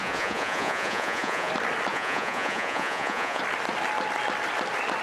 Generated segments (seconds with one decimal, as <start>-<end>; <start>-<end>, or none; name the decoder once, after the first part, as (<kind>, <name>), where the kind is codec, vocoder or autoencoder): 0.0-1.5 (vocoder, Vocos); 1.9-3.4